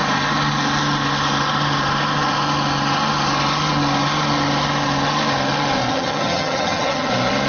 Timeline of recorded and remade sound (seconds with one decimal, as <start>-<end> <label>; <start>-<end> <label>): 0.0-5.9 recorded; 5.9-7.1 remade; 7.1-7.5 recorded

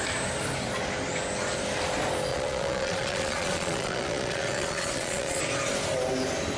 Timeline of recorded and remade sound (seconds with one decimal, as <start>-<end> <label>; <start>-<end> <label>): 0.0-2.3 recorded; 2.3-5.4 remade; 5.4-6.6 recorded

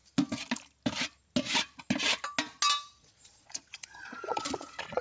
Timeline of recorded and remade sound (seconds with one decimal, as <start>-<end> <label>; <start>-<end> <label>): 0.0-3.0 recorded; 3.0-5.0 remade